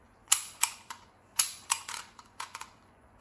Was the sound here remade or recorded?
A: remade